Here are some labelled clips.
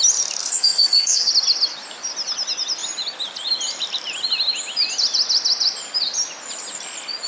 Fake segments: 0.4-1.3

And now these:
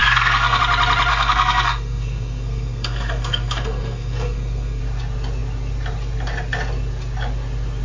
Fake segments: 0.0-0.6; 1.1-4.8

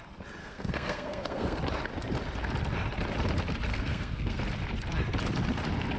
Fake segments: 0.4-1.6; 3.7-4.4

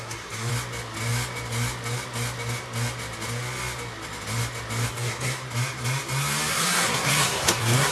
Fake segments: 0.0-0.5; 4.9-5.4; 6.5-7.9

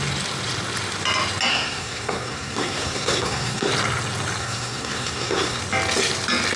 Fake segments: 1.5-3.7; 4.4-5.6

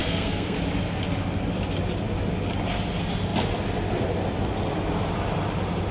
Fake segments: 0.0-0.6

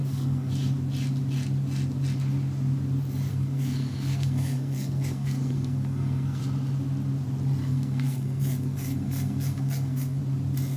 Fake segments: 0.0-0.5; 3.3-6.4; 7.6-10.2

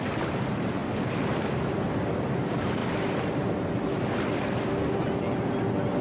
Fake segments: none